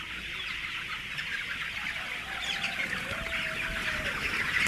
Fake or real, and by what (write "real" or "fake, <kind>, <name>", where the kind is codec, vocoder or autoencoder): real